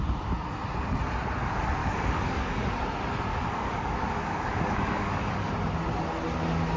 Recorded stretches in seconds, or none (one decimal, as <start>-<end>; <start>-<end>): 0.0-1.8; 2.7-3.3; 5.5-6.8